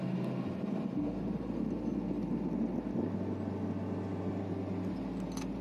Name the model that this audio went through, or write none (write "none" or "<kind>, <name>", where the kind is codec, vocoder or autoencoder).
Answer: none